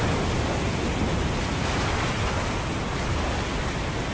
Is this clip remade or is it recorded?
recorded